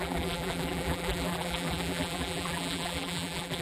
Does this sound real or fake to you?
fake